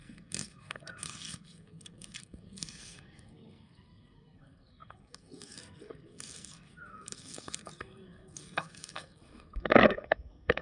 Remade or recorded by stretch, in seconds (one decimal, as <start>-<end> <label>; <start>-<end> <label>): 0.0-10.6 remade